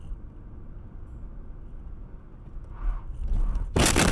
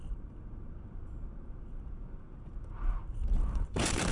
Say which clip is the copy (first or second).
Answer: second